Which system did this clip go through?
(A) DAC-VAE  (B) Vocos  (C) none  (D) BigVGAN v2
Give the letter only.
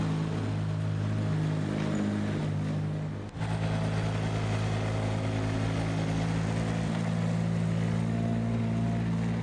C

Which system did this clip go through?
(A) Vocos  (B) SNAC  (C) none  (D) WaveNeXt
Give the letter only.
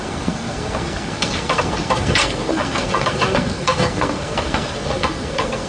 B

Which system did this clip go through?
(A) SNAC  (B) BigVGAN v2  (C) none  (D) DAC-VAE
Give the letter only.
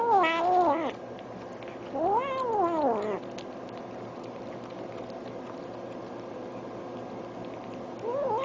C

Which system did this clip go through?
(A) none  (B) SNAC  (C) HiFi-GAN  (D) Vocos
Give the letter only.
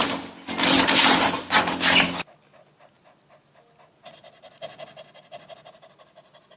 A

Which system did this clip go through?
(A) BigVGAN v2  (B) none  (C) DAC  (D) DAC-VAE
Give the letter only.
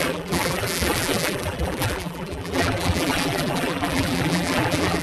A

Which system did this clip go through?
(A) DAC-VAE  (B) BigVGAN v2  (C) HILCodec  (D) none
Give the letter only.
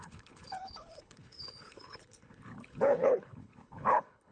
C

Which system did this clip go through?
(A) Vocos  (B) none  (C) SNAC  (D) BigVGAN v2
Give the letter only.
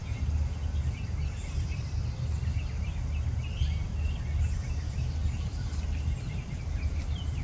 B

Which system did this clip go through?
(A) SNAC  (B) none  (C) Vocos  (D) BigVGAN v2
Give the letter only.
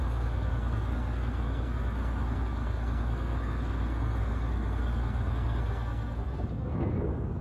A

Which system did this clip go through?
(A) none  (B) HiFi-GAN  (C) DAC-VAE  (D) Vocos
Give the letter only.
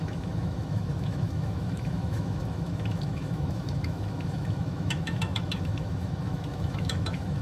C